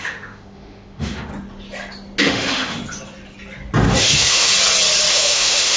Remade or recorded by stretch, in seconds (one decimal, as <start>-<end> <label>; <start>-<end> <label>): 0.0-1.3 remade; 1.3-2.2 recorded; 2.2-2.8 remade; 2.8-4.0 recorded; 4.0-4.5 remade; 4.5-5.1 recorded; 5.1-5.8 remade